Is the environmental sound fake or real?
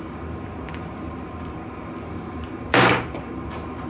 fake